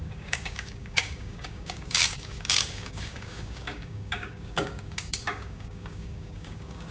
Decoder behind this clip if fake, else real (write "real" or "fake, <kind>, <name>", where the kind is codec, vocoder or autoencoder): fake, codec, DAC